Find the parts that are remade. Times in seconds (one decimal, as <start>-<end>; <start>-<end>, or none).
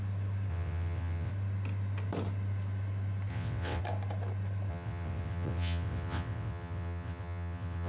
0.5-1.3; 3.3-3.8; 4.7-7.9